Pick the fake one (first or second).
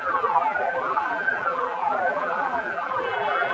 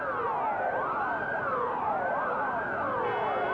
first